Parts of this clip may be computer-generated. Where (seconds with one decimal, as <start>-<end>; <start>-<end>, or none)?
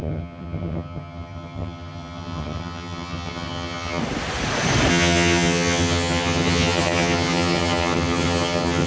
0.0-4.0; 4.9-8.9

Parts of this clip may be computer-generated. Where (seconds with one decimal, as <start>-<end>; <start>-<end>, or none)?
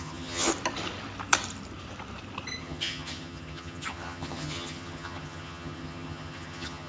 0.0-0.5; 2.6-6.9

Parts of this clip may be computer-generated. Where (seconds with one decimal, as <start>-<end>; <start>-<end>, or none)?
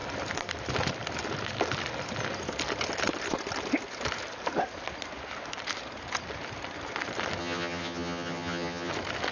7.4-8.9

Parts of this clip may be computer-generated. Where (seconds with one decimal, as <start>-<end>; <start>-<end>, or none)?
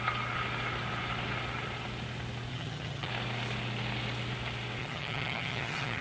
2.5-3.1; 4.8-6.0